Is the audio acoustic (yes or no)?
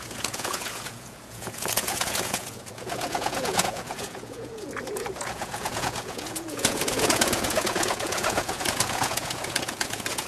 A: no